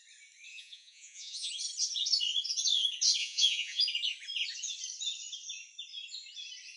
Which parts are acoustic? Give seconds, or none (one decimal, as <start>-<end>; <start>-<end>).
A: 0.0-0.5; 1.5-3.2; 3.8-6.8